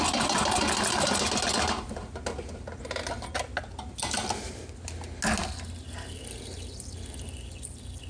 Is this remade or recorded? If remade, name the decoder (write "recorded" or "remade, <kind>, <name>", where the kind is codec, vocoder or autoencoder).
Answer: recorded